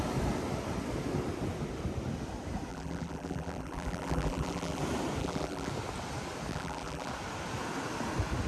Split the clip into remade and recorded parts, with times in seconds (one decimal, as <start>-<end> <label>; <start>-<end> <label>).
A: 0.0-2.7 recorded; 2.7-4.8 remade; 4.8-5.2 recorded; 5.2-5.7 remade; 5.7-6.5 recorded; 6.5-7.1 remade; 7.1-8.5 recorded